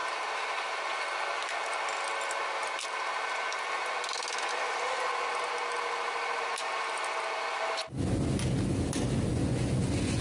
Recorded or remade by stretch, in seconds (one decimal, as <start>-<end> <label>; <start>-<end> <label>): 0.0-9.3 recorded; 9.3-10.2 remade